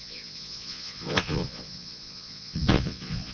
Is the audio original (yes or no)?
no